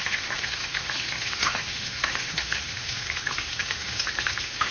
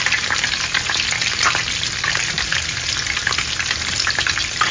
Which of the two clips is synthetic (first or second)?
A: first